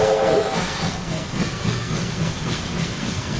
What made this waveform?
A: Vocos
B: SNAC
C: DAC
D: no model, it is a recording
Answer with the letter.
B